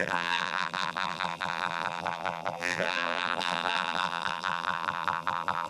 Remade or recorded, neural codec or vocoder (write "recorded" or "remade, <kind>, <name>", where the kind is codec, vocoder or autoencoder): remade, vocoder, BigVGAN v2